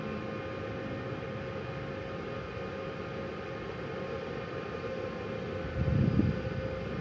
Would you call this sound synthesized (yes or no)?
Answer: no